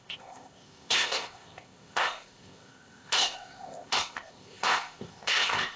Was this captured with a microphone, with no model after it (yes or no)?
no